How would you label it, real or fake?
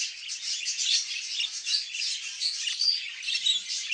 real